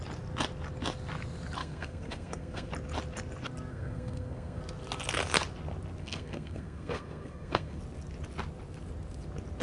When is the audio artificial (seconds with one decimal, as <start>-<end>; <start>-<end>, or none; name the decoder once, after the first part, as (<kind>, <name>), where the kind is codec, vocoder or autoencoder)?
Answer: 1.6-2.7 (codec, SNAC); 3.7-4.6; 6.0-7.8